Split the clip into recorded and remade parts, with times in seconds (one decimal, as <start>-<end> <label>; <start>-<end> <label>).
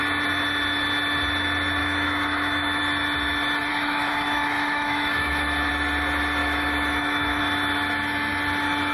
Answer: 0.0-1.8 recorded; 1.8-2.8 remade; 2.8-3.7 recorded; 3.7-5.7 remade; 5.7-6.4 recorded; 6.4-7.4 remade; 7.4-8.9 recorded